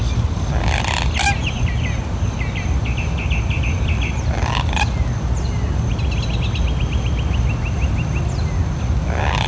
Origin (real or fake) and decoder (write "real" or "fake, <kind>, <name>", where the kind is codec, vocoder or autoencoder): real